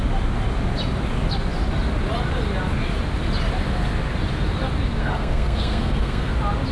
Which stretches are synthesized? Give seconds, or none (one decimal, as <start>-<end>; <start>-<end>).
5.0-6.3